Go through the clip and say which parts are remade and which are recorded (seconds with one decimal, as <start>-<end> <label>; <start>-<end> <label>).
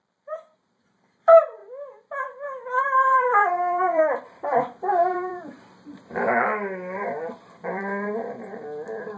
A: 0.0-1.6 remade; 1.6-2.8 recorded; 2.8-9.2 remade